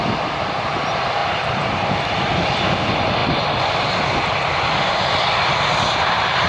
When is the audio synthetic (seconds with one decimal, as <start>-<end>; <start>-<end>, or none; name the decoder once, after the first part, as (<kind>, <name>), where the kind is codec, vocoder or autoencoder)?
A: 1.2-2.7 (vocoder, BigVGAN v2); 3.2-4.1